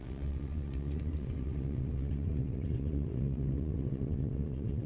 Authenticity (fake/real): fake